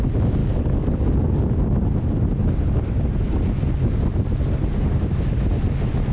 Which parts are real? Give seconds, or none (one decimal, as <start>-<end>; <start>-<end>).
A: 0.0-0.4; 1.4-6.1